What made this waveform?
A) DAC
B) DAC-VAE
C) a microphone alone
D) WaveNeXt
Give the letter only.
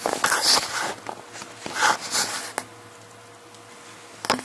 C